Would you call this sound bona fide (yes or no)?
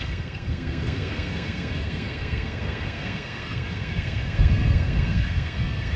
no